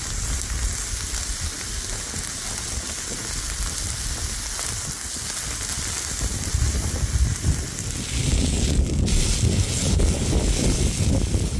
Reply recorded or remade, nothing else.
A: recorded